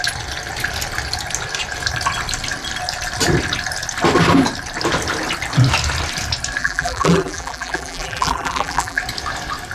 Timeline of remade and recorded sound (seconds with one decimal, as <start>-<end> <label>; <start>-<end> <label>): 0.0-6.6 recorded; 6.6-9.0 remade; 9.0-9.7 recorded